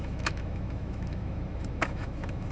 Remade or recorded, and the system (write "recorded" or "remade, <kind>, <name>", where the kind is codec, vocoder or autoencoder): remade, autoencoder, DAC-VAE